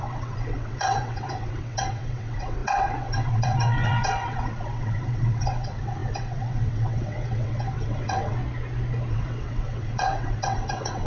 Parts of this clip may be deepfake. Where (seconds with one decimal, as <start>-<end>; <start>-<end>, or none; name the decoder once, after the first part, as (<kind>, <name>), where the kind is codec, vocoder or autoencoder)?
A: 0.0-8.4 (vocoder, WaveNeXt); 9.1-11.1